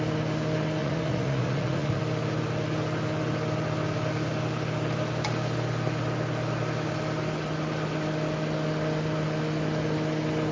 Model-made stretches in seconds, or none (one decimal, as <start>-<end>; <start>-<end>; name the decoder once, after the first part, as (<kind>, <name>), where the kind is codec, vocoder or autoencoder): 0.8-2.0 (vocoder, Vocos)